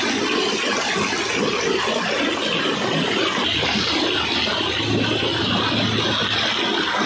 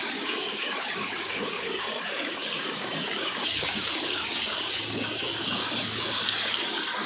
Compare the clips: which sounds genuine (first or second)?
first